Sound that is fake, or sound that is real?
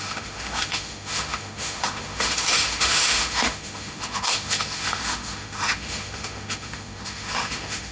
fake